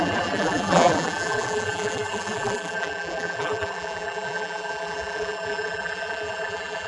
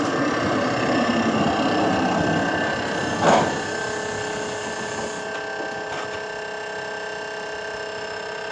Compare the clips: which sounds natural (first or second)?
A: second